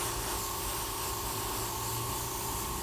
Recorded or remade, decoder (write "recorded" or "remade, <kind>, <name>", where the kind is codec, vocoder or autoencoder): recorded